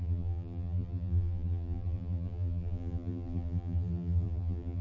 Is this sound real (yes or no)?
no